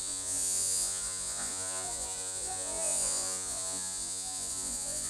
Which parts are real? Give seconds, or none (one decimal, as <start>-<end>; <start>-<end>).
none